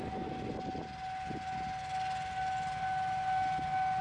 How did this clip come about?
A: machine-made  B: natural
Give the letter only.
B